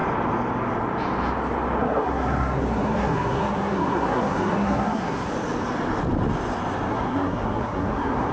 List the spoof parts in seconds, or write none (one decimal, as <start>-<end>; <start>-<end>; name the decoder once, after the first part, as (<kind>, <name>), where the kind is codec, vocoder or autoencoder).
1.8-5.3 (codec, SNAC); 6.9-8.3